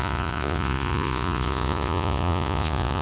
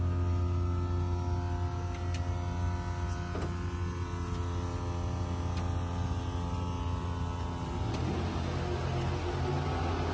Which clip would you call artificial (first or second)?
first